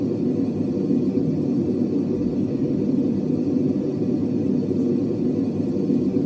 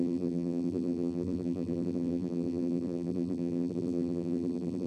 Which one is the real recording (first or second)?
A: first